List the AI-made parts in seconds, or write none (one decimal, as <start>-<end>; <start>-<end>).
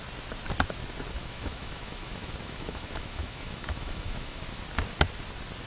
1.2-4.6